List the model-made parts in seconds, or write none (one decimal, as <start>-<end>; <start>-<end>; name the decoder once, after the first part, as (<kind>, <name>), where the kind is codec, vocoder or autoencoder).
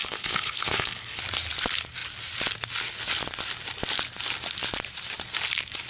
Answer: 0.0-1.2 (codec, HILCodec)